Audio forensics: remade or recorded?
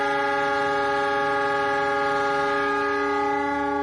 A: recorded